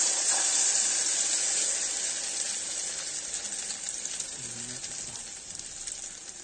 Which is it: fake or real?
real